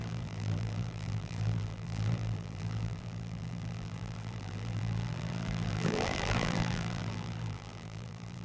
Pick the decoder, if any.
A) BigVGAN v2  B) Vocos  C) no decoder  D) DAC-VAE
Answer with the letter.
A